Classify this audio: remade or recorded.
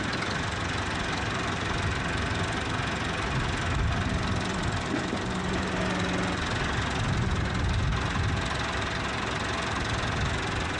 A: recorded